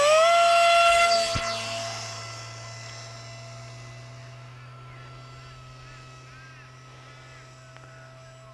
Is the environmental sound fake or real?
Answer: real